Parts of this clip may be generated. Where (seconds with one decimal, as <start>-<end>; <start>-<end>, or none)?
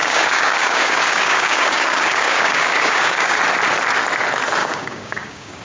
0.0-3.4; 4.6-5.6